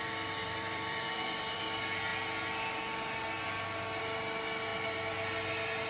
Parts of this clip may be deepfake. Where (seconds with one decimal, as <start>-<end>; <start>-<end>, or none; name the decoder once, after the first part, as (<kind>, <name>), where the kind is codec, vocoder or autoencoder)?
0.4-1.6 (vocoder, BigVGAN v2)